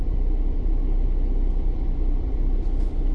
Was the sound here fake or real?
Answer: fake